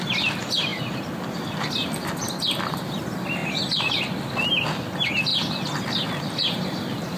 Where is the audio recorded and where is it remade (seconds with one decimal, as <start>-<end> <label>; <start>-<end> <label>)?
0.0-5.3 recorded; 5.3-7.2 remade